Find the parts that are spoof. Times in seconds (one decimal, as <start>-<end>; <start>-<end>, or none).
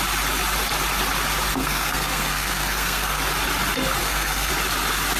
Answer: 1.5-3.2; 4.0-4.5